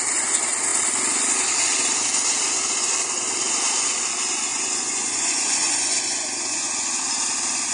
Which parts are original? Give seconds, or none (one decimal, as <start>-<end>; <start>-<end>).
0.0-4.5; 7.0-7.7

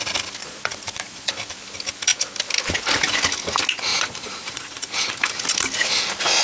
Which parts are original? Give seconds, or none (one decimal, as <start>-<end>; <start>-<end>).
0.0-0.4; 1.3-3.9; 5.1-6.4

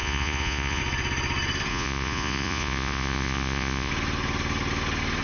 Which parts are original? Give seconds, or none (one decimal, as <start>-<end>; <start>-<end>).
0.8-1.7; 3.9-5.2

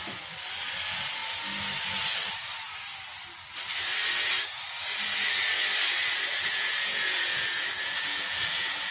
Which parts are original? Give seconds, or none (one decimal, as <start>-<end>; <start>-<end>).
0.0-6.0

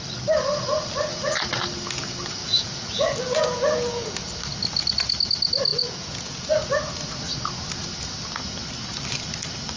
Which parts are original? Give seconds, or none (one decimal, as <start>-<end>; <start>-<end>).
0.0-2.4; 4.1-5.7; 6.5-9.8

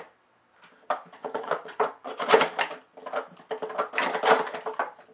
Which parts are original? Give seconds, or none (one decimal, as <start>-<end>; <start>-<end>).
0.0-1.2; 2.4-5.1

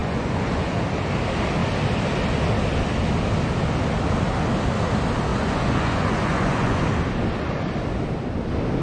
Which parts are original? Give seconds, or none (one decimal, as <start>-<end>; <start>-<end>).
0.8-5.3; 6.8-8.8

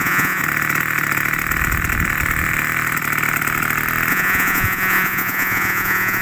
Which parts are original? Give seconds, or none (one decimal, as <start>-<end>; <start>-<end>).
0.4-4.1